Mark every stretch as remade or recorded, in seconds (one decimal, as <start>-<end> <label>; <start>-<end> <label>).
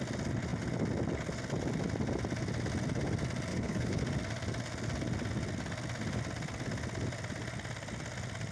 0.0-3.5 recorded; 3.5-4.0 remade; 4.0-8.5 recorded